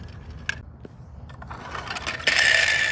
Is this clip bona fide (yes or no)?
yes